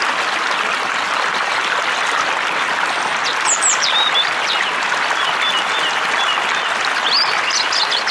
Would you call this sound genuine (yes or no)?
yes